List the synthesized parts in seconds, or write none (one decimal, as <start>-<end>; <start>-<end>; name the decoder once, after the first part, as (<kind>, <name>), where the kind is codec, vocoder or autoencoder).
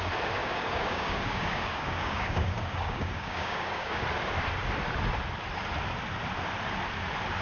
0.4-4.0 (codec, DAC)